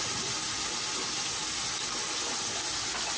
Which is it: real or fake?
real